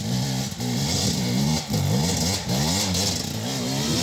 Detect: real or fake real